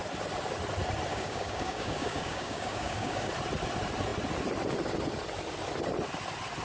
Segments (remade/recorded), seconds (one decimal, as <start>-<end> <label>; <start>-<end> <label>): 0.0-1.1 recorded; 1.1-3.3 remade; 3.3-6.6 recorded